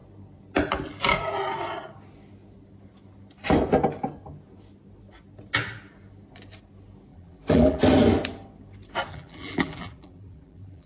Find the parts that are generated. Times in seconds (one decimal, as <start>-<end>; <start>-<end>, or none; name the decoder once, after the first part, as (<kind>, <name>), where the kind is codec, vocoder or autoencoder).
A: 7.1-7.8 (vocoder, BigVGAN v2); 9.1-10.9